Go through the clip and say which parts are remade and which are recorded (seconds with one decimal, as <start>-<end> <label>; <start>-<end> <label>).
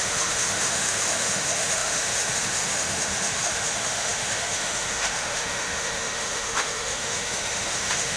0.0-8.2 remade